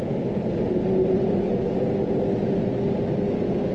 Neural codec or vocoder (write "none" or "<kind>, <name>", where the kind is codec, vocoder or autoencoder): none